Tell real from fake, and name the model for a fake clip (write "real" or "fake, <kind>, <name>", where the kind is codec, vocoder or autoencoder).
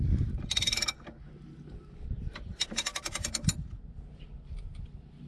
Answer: real